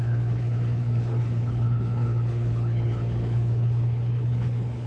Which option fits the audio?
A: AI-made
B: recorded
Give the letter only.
A